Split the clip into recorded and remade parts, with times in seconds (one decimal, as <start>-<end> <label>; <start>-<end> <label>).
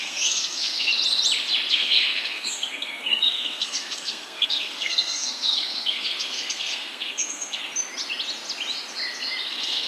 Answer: 0.0-0.9 remade; 0.9-1.7 recorded; 1.7-7.6 remade; 7.6-9.5 recorded; 9.5-9.9 remade